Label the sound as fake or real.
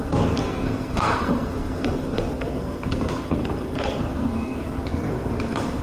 fake